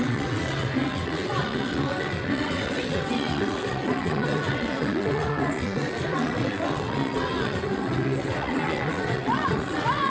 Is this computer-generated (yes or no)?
yes